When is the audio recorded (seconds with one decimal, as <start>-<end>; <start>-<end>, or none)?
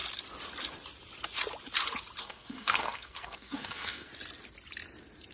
0.0-2.2; 4.1-5.3